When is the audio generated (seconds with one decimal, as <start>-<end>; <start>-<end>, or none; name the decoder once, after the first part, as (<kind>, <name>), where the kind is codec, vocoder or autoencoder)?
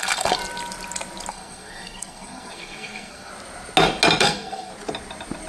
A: 0.0-0.4 (codec, SNAC); 1.3-3.3; 4.2-4.7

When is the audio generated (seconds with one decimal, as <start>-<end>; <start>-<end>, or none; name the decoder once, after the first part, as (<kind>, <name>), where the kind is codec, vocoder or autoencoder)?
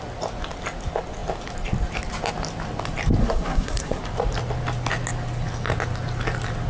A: 3.2-4.0 (codec, SNAC)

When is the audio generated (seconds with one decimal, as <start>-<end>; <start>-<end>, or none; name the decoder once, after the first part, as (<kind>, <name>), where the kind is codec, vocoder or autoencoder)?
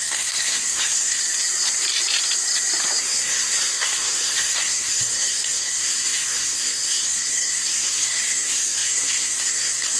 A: 0.0-1.2 (codec, SNAC); 3.0-10.0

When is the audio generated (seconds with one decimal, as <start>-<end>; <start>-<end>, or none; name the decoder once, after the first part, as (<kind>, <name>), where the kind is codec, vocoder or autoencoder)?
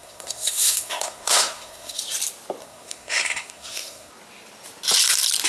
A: 0.0-2.0 (codec, SNAC); 2.6-4.1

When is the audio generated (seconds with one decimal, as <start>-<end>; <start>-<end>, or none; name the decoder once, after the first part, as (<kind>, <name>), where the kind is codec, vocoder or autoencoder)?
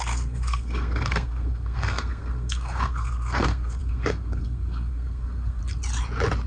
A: 0.0-5.6 (codec, SNAC)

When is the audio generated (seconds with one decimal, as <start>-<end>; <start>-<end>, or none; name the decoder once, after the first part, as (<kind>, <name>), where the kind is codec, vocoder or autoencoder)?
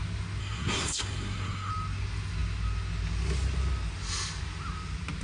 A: 0.4-1.7 (codec, SNAC)